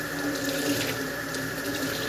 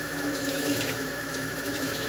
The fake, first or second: second